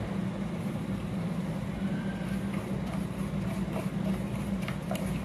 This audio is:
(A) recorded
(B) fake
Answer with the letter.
A